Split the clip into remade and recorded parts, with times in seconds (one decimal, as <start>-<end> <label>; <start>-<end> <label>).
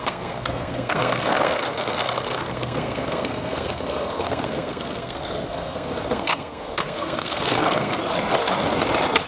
0.0-8.0 remade; 8.0-9.3 recorded